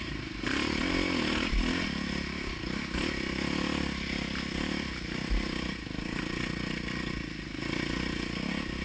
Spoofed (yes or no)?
no